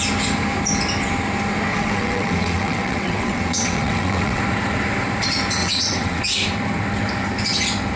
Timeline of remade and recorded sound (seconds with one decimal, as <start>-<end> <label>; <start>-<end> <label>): 0.0-1.7 recorded; 1.7-4.4 remade; 4.4-5.6 recorded; 5.6-6.2 remade; 6.2-8.0 recorded